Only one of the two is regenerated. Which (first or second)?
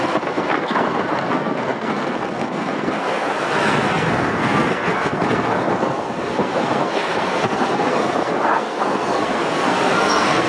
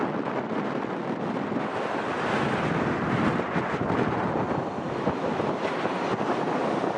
first